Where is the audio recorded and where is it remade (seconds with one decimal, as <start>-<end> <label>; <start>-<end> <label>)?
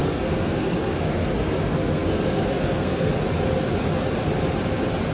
0.0-3.1 remade; 3.1-5.1 recorded